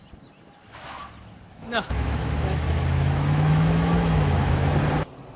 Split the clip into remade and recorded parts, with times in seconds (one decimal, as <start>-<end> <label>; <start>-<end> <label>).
0.0-1.5 recorded; 1.5-4.7 remade; 4.7-5.4 recorded